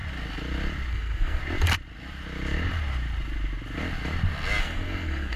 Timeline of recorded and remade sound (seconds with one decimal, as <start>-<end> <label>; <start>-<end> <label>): 0.0-0.9 recorded; 0.9-1.4 remade; 1.4-4.6 recorded; 4.6-5.4 remade